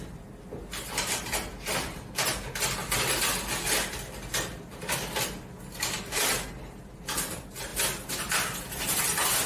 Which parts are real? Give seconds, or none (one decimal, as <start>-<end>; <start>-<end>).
0.0-9.5

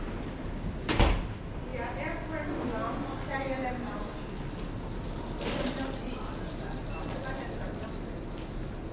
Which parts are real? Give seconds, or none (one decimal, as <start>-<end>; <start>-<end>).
0.0-8.9

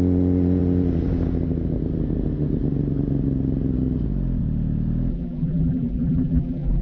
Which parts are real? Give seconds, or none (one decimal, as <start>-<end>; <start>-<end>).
0.0-5.1

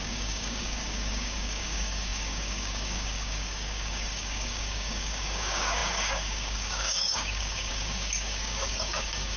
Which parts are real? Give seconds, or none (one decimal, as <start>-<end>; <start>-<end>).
none

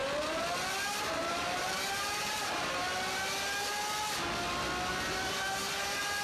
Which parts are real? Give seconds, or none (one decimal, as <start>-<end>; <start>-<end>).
0.0-1.0; 2.8-4.9

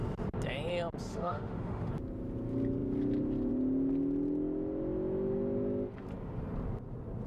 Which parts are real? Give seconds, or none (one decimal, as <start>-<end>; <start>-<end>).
0.0-1.1; 1.9-7.3

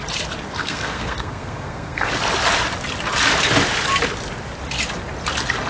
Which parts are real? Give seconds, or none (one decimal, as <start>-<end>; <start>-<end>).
0.0-0.6; 2.1-5.7

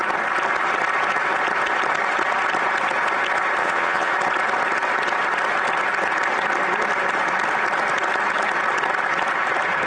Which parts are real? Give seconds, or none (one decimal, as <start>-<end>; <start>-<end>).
0.0-3.6; 4.1-9.9